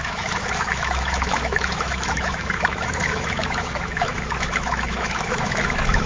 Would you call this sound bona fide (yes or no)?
no